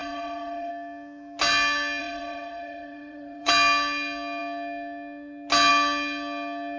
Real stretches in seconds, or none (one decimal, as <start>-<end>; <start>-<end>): 0.7-2.0; 3.5-6.8